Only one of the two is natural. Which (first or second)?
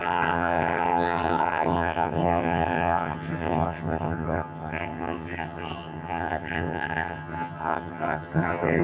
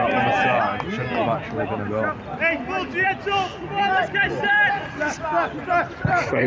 second